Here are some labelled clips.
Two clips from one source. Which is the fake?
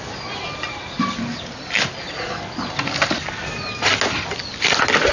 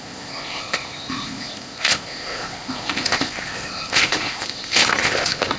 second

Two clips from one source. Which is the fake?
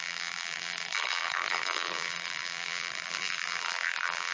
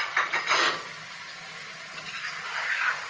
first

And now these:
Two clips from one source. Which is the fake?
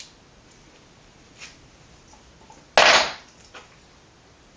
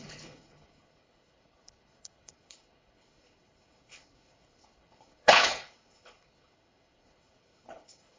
second